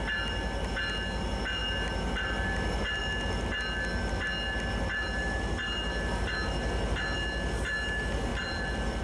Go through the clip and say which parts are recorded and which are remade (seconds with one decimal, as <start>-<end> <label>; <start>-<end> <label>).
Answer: 0.0-8.3 recorded; 8.3-9.0 remade